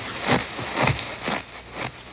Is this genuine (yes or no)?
yes